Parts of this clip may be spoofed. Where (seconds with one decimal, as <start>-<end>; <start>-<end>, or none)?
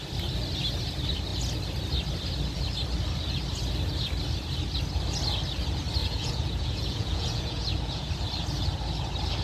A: 6.0-8.1